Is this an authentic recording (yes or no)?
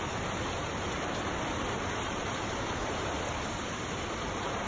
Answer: no